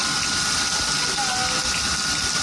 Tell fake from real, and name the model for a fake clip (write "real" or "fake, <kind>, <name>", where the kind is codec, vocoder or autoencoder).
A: real